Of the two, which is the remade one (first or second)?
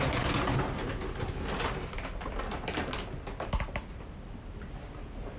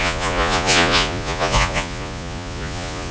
second